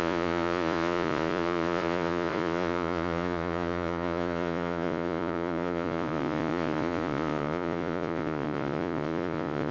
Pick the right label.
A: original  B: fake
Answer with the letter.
B